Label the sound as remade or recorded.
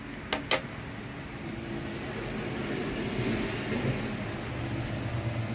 recorded